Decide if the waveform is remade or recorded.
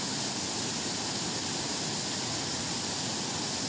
recorded